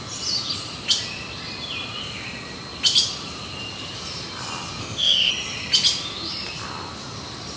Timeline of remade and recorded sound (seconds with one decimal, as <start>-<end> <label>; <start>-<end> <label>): 0.0-4.8 recorded; 4.8-5.3 remade; 5.3-7.6 recorded